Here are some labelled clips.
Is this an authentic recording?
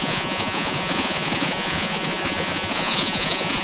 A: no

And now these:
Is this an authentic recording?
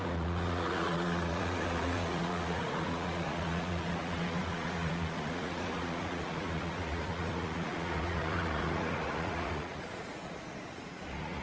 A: no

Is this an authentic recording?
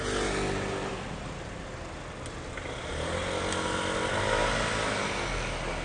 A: yes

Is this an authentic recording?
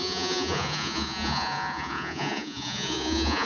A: no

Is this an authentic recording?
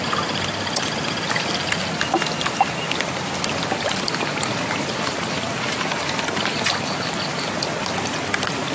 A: yes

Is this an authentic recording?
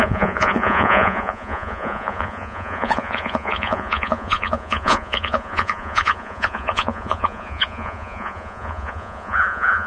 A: no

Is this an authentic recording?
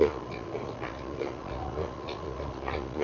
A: no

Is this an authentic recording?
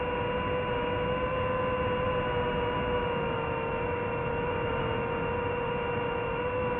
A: yes